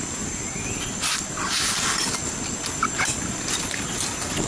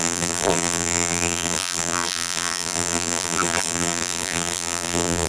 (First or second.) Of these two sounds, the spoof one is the second